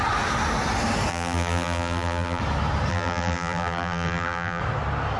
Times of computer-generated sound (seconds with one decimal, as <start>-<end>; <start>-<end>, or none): 1.1-2.4; 2.9-4.6